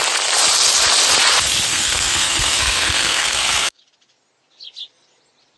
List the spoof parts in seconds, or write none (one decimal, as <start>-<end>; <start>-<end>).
1.7-3.8